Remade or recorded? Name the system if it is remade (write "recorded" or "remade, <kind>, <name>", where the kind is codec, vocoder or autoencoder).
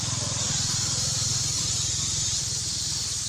remade, vocoder, BigVGAN v2